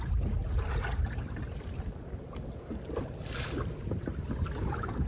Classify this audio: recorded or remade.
recorded